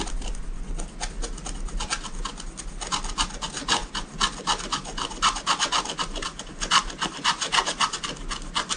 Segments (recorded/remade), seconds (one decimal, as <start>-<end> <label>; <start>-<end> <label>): 0.0-8.8 recorded